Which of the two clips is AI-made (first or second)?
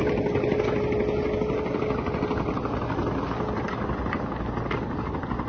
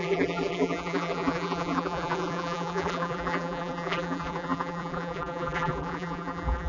second